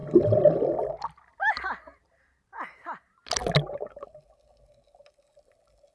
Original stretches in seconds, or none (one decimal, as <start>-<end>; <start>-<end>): 0.0-5.9